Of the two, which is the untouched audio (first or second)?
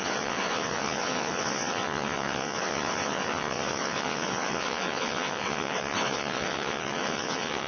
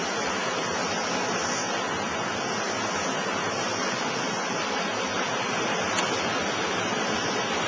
second